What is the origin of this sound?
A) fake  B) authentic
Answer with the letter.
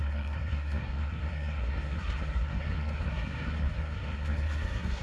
A